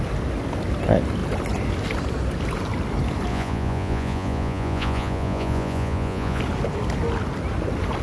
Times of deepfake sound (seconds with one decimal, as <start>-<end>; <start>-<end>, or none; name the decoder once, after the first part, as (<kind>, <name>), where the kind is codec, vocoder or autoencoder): 3.3-6.4 (vocoder, Vocos)

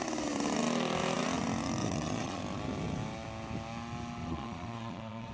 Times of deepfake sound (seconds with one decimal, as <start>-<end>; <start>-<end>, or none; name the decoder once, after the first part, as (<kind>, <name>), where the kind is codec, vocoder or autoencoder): 1.8-2.4 (vocoder, Vocos); 4.2-5.3

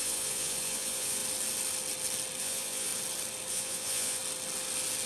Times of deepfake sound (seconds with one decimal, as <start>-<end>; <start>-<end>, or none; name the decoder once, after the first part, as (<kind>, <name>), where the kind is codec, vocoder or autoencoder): 0.0-1.2 (vocoder, Vocos); 2.4-2.9; 3.5-4.2

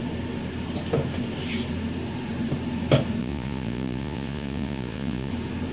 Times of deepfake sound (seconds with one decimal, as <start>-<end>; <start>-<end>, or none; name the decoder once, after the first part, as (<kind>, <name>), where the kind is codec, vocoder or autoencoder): 3.2-5.3 (vocoder, Vocos)

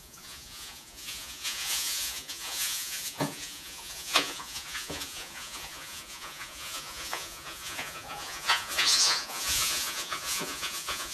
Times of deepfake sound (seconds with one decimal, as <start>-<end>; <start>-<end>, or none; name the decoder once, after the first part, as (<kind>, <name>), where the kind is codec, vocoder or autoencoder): 0.0-11.1 (vocoder, Vocos)

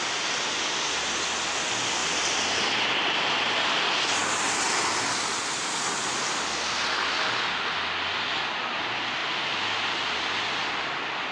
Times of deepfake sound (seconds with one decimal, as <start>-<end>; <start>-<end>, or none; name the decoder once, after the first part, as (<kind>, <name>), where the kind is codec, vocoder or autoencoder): none

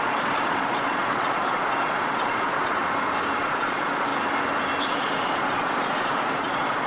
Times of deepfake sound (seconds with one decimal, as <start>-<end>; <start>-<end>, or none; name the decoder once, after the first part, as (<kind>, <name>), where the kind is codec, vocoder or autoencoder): 0.0-2.8 (vocoder, Vocos); 3.4-4.1; 4.8-6.9